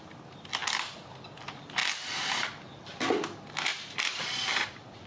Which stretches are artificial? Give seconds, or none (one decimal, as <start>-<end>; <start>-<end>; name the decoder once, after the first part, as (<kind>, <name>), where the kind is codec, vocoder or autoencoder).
1.8-3.0 (vocoder, BigVGAN v2); 3.7-5.1